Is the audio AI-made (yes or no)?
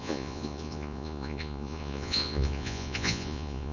yes